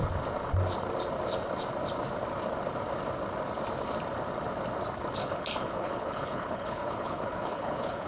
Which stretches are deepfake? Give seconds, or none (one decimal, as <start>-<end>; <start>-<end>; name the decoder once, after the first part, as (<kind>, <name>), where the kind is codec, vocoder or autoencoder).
5.2-8.1 (codec, HILCodec)